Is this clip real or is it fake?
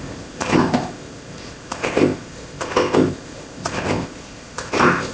fake